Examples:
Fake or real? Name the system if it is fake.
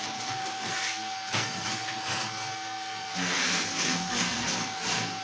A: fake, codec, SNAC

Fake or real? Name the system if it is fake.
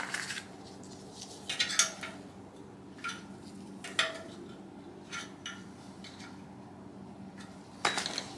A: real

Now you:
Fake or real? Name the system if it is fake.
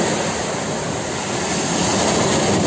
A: real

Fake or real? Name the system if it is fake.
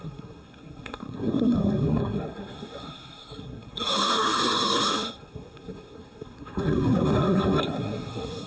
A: fake, codec, SNAC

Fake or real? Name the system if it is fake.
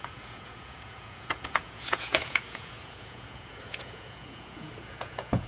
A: fake, vocoder, Vocos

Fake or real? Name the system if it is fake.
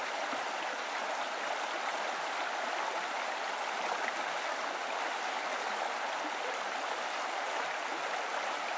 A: real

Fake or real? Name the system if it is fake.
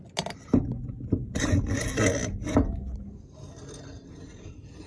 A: real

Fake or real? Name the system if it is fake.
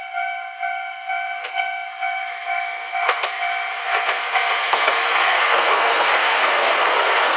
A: fake, codec, SNAC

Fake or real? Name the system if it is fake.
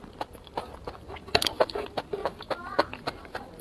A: real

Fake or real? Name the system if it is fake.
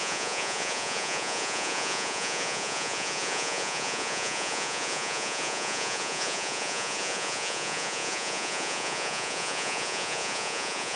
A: fake, vocoder, Vocos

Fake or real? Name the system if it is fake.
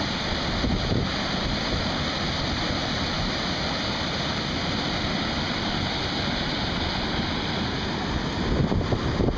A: real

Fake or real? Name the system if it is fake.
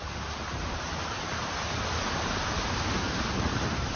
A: real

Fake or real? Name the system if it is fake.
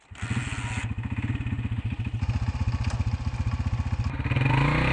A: real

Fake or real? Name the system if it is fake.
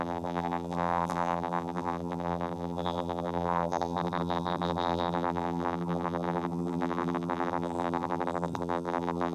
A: fake, vocoder, BigVGAN v2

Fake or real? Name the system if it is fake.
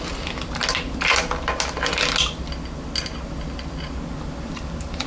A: real